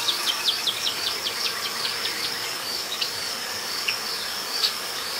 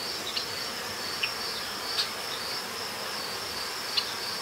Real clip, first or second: second